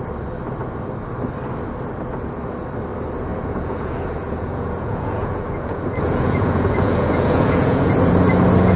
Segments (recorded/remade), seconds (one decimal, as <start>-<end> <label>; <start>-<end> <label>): 0.0-3.3 recorded; 3.3-7.9 remade; 7.9-8.8 recorded